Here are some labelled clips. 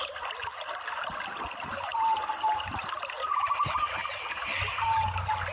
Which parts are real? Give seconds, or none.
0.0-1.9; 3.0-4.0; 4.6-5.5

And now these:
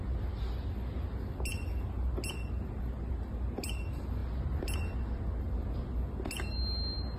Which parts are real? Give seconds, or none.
0.0-7.2

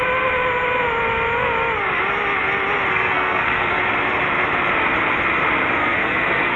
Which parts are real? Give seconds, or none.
0.0-2.9; 3.8-5.8

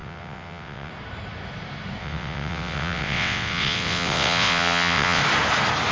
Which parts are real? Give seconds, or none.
0.9-2.0; 5.2-5.9

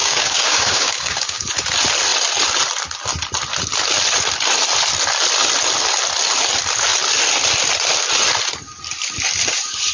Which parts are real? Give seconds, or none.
1.5-9.9

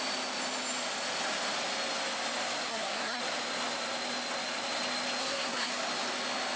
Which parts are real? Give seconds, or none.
0.0-2.7; 3.2-5.2; 5.7-6.6

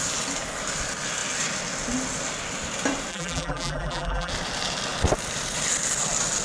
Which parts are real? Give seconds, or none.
0.0-3.1; 4.3-6.4